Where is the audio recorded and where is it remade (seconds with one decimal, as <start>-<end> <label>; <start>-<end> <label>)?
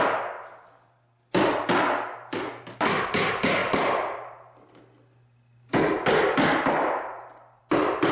0.0-8.1 recorded